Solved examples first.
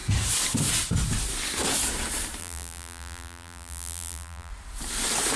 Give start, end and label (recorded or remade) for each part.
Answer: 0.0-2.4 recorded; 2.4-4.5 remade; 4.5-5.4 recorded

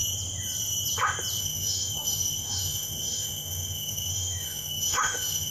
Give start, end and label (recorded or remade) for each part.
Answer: 0.0-1.4 recorded; 1.4-5.5 remade

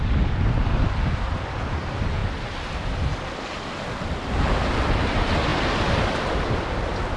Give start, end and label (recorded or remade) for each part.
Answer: 0.0-7.2 recorded

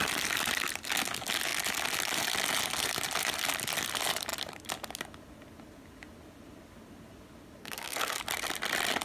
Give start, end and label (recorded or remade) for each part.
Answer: 0.0-7.6 recorded; 7.6-8.2 remade; 8.2-9.0 recorded

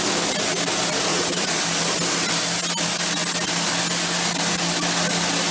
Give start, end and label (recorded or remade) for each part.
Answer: 0.0-1.1 recorded; 1.1-1.6 remade; 1.6-5.5 recorded